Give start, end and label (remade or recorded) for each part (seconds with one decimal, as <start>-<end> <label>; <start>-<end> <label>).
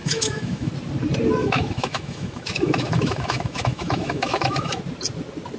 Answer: 0.0-0.7 remade; 0.7-1.4 recorded; 1.4-4.8 remade; 4.8-5.6 recorded